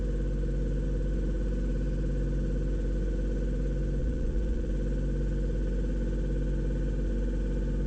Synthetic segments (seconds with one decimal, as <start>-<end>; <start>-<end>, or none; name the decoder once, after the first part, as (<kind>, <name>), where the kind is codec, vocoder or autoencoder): 4.0-4.7 (vocoder, Vocos)